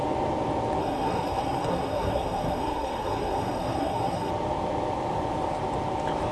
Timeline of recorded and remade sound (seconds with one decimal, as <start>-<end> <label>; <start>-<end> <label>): 0.0-0.8 recorded; 0.8-4.3 remade; 4.3-6.3 recorded

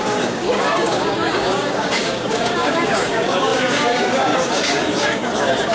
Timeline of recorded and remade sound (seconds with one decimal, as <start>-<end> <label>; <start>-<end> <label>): 0.0-5.7 remade

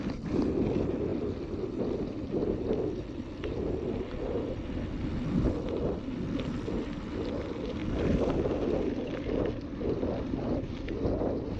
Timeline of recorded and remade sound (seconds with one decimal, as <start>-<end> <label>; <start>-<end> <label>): 0.0-11.6 recorded